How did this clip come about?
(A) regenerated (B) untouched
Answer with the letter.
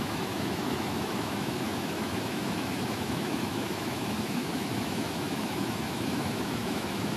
A